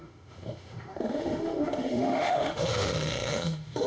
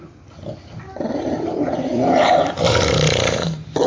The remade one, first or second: first